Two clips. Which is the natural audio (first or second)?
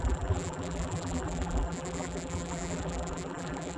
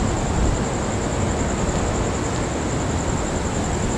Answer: second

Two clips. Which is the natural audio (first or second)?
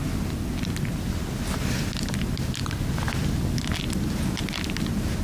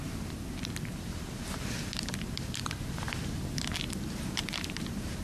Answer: first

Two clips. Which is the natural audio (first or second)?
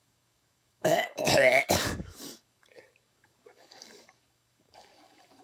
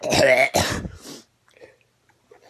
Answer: second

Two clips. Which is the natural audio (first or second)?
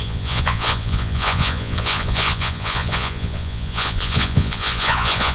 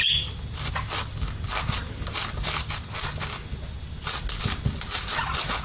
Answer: second